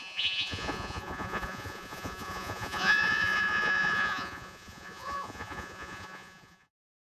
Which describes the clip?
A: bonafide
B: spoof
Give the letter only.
B